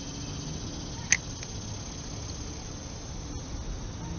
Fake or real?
real